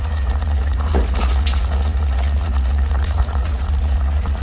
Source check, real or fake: fake